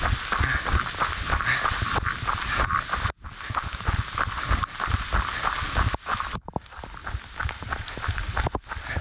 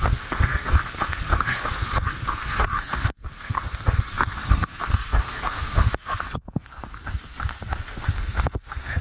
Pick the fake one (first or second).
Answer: second